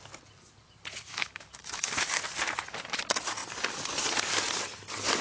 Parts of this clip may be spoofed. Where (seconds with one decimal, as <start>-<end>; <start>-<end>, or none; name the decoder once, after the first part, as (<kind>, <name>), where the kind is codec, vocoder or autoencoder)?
1.1-2.2 (autoencoder, DAC-VAE)